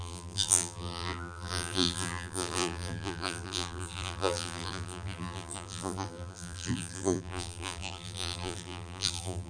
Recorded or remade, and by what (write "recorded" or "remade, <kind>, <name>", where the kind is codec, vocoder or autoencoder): remade, vocoder, BigVGAN v2